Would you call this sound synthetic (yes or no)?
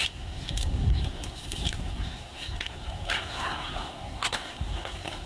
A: yes